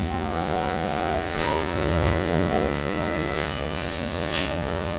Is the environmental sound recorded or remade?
remade